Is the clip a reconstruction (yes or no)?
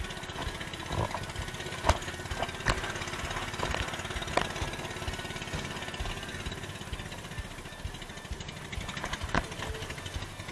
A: no